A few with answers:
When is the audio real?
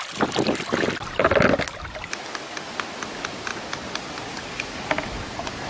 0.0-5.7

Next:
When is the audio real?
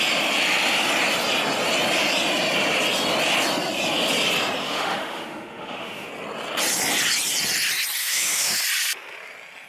0.0-4.6; 6.1-8.0; 8.6-9.7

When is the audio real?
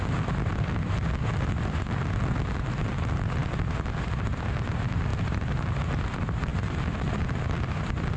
0.0-8.2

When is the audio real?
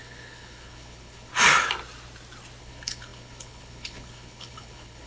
1.3-2.6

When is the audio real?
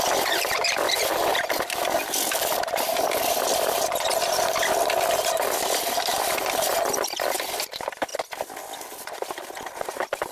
8.1-10.3